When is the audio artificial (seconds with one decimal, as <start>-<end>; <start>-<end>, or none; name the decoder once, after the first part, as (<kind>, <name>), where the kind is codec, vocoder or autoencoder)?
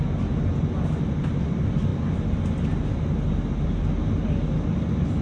none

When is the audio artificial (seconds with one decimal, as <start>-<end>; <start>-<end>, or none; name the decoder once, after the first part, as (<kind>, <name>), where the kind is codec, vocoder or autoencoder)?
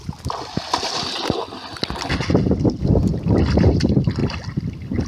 none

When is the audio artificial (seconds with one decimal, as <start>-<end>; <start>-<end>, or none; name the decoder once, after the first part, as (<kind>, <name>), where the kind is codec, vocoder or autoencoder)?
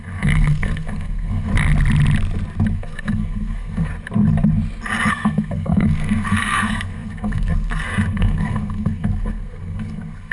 0.0-1.5 (codec, SNAC); 2.7-3.9; 5.1-10.3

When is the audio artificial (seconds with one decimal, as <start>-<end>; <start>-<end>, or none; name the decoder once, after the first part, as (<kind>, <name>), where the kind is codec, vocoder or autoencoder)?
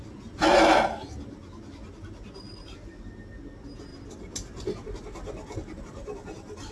3.9-5.8 (vocoder, BigVGAN v2)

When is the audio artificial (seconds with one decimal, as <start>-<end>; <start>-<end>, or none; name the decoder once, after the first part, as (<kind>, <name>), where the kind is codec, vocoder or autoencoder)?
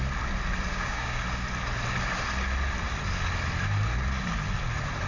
0.7-1.2 (codec, DAC)